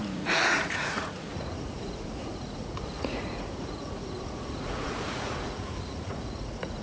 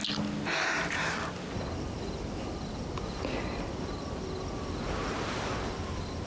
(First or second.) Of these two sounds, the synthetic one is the first